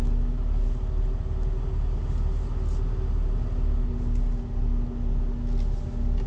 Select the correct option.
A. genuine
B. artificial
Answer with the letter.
A